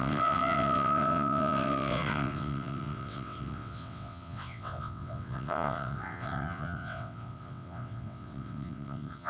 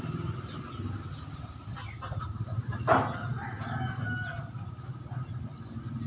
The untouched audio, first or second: second